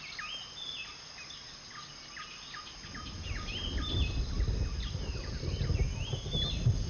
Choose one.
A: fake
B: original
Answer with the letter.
B